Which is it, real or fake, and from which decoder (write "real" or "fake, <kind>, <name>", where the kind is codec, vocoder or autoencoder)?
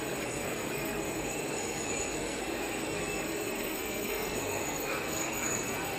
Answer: fake, codec, SNAC